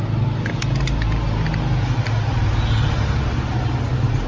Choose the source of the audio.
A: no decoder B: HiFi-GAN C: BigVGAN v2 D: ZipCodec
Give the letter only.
A